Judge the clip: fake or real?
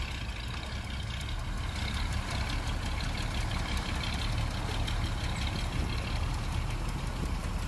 real